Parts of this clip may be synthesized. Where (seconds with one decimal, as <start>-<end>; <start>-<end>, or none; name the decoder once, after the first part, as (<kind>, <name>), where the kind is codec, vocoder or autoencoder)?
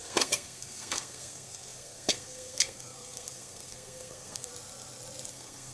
0.0-4.5 (codec, SNAC); 5.3-5.7